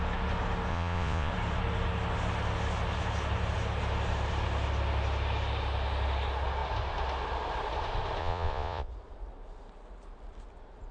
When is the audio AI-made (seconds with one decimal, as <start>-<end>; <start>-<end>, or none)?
0.7-1.3; 8.2-8.9

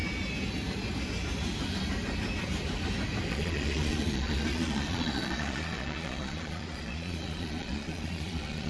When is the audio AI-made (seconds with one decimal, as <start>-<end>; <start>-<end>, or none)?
3.3-8.7

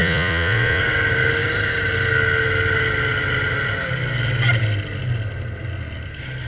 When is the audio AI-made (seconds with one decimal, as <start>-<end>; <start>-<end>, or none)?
0.0-0.8

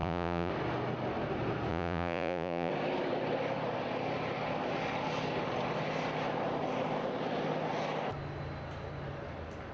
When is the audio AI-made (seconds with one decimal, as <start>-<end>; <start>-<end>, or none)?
0.0-0.5; 1.7-2.7